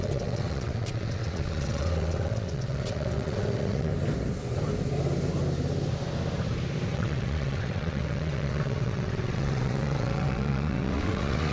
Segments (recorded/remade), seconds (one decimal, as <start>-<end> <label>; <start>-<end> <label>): 0.0-3.9 remade; 3.9-6.9 recorded; 6.9-11.5 remade